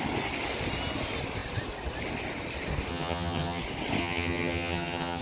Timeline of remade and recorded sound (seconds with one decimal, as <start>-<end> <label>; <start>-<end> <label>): 0.0-2.9 recorded; 2.9-3.6 remade; 3.6-4.0 recorded; 4.0-5.2 remade